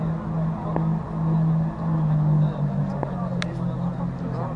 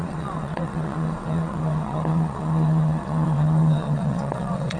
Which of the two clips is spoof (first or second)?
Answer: second